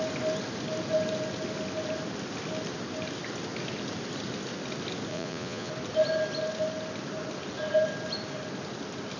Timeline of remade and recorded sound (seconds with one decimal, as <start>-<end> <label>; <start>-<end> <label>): 0.0-5.1 recorded; 5.1-5.7 remade; 5.7-9.2 recorded